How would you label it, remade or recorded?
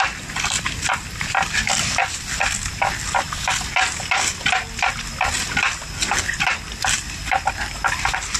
recorded